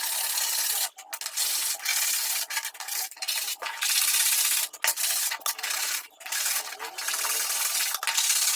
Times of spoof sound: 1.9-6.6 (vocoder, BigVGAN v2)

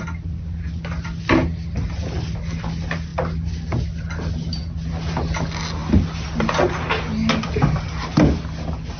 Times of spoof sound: none

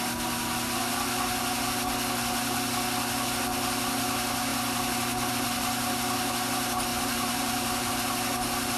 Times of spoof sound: 6.9-7.9 (vocoder, BigVGAN v2)

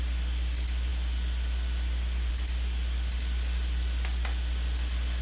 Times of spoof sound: none

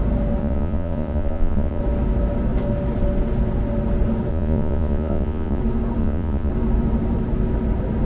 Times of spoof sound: 0.4-1.8 (vocoder, Vocos); 4.3-5.6; 6.0-6.5